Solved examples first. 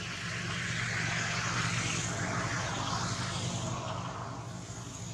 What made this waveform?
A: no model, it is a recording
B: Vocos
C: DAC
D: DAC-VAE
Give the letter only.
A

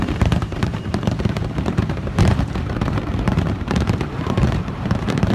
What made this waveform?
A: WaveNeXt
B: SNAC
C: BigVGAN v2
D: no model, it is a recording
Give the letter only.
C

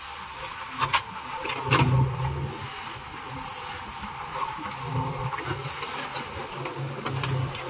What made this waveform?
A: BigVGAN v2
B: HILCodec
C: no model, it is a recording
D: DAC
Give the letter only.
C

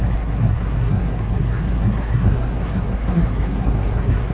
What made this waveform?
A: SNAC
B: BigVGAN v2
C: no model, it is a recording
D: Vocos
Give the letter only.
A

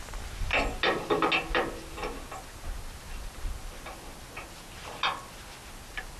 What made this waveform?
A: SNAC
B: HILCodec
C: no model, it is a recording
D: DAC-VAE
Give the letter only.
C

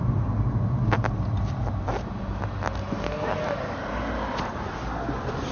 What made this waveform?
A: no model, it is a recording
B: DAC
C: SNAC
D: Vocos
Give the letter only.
A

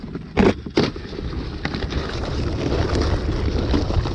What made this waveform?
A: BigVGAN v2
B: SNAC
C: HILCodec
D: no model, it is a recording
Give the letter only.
D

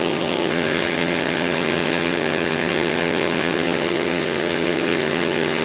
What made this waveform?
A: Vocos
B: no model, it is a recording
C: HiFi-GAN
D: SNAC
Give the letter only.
C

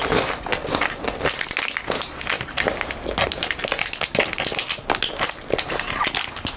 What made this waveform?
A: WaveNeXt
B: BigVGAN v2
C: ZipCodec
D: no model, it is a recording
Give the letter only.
D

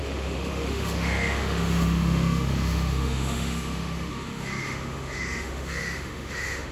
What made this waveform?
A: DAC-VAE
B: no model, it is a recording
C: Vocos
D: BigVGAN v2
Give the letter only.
A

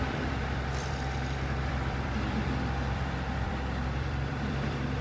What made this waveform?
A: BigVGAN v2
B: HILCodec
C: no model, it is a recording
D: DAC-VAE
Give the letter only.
A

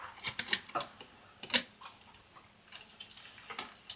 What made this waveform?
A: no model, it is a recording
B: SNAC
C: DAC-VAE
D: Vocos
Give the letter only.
A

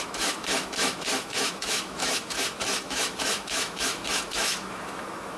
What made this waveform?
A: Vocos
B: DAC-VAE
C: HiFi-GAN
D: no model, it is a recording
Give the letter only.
B